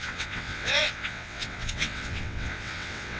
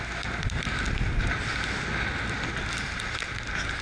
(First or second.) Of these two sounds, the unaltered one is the second